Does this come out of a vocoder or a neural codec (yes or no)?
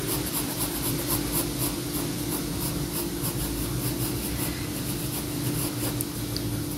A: no